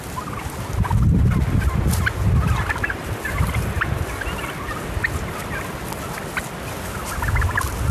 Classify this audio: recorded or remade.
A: recorded